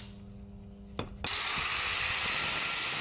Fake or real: real